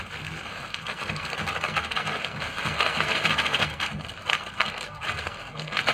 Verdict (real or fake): fake